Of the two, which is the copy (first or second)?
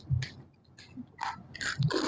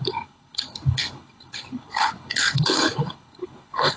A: second